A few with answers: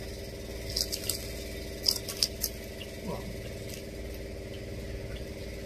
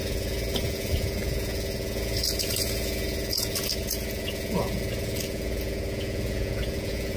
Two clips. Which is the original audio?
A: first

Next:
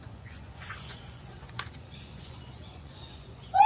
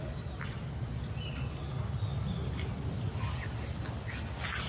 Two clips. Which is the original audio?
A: second